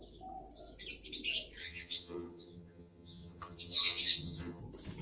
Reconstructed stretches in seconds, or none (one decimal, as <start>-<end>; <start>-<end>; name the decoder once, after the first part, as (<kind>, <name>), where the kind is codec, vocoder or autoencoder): 1.6-4.6 (vocoder, HiFi-GAN)

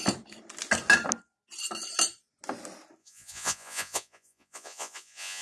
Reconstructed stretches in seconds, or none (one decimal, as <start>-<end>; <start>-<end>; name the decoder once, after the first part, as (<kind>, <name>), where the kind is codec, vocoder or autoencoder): 3.0-5.4 (vocoder, Vocos)

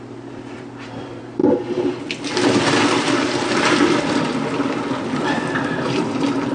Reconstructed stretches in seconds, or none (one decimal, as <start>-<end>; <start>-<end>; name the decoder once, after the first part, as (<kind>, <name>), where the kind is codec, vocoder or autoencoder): 0.0-1.4 (vocoder, BigVGAN v2); 4.0-6.5

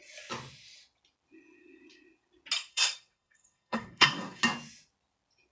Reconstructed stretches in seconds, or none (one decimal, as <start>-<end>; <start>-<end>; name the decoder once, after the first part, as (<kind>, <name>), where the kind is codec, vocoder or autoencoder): 2.7-4.4 (codec, SNAC)

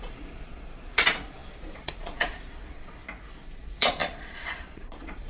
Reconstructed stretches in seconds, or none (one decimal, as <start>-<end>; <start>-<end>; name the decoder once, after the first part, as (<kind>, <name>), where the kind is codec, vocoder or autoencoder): 0.0-3.0 (vocoder, Vocos); 3.6-5.3

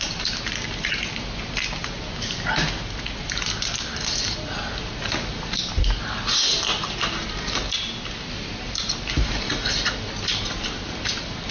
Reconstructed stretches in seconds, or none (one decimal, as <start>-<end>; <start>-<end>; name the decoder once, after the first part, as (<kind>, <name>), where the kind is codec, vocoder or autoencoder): none